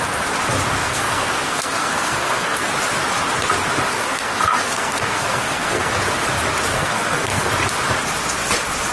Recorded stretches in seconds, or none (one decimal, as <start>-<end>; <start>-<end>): 0.0-0.8; 2.7-3.9; 5.9-6.7; 7.5-8.9